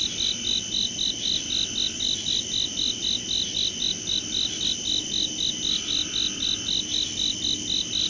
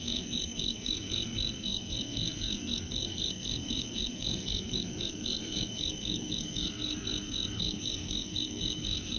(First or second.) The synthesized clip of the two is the second